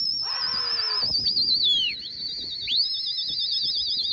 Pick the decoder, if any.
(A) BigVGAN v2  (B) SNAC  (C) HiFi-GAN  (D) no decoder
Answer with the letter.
D